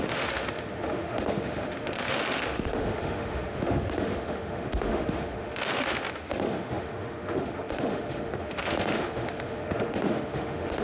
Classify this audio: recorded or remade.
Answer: remade